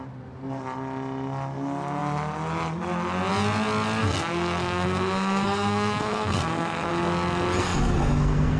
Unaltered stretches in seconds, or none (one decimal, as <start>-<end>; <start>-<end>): 0.0-4.0; 6.9-7.6